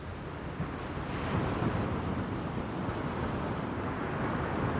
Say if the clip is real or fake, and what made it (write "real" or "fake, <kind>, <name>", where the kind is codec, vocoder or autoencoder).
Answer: real